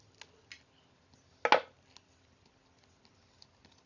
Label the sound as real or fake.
real